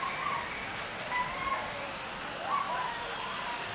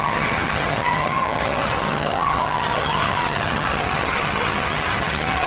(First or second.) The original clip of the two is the first